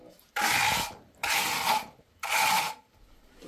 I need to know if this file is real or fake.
real